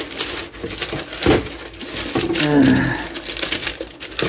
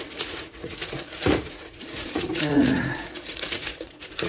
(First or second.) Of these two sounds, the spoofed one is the second